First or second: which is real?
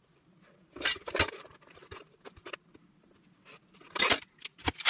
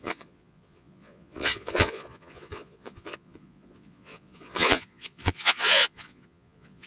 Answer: first